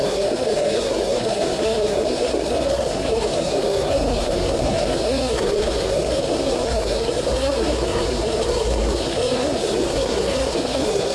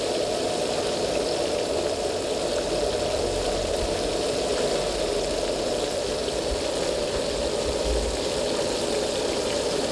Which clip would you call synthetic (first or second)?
first